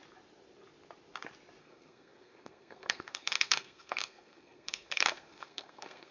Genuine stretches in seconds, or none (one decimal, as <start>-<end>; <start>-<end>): 0.0-1.6